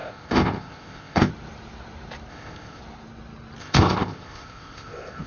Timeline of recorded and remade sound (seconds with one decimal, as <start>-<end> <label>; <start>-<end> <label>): 0.0-1.3 remade; 1.3-2.3 recorded; 2.3-2.8 remade; 2.8-3.6 recorded; 3.6-5.3 remade